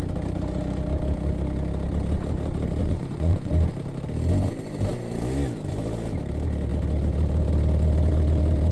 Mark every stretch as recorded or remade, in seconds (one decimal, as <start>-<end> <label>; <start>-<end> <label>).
0.0-2.8 recorded; 2.8-3.5 remade; 3.5-8.7 recorded